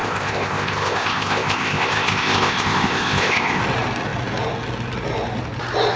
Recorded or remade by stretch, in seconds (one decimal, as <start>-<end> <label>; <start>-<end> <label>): 0.0-3.6 remade; 3.6-6.0 recorded